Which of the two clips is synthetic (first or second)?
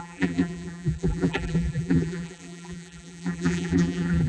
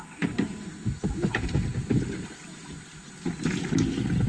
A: first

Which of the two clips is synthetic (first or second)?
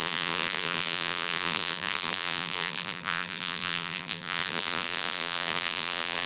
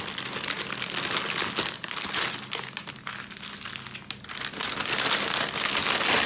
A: first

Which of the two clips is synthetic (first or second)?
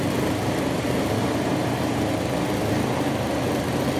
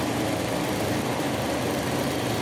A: second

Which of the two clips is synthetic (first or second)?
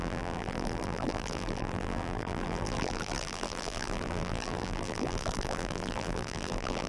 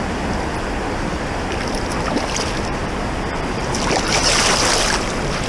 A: first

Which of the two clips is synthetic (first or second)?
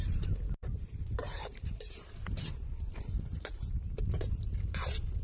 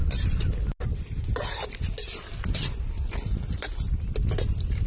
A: first